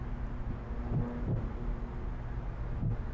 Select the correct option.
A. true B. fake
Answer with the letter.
A